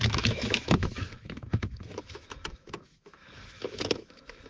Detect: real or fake fake